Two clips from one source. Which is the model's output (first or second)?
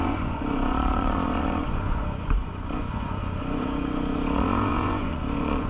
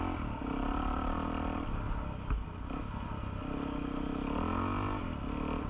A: first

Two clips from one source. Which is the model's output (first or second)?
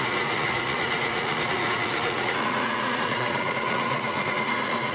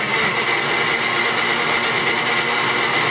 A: first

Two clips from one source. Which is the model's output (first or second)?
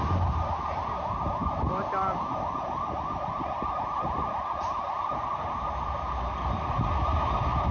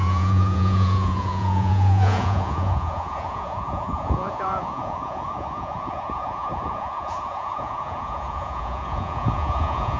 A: second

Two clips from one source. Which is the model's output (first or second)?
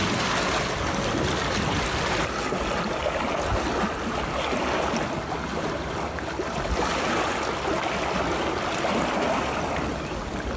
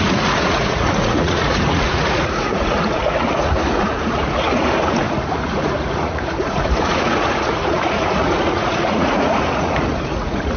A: second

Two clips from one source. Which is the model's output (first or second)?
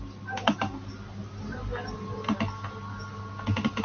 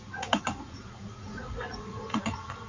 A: second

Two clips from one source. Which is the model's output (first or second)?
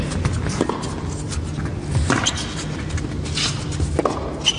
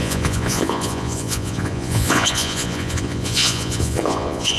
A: second